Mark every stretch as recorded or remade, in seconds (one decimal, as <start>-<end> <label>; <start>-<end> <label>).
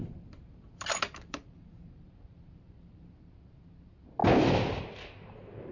0.0-3.4 remade; 3.4-5.7 recorded